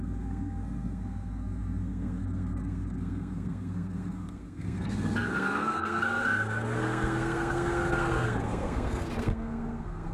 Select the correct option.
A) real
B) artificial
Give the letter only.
B